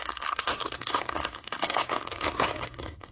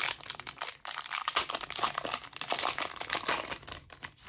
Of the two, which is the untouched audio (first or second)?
second